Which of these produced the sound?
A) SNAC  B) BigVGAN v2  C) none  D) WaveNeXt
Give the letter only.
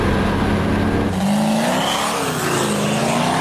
C